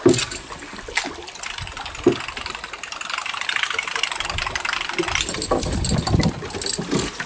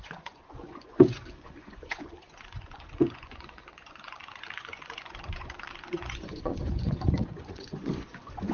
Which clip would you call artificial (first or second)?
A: second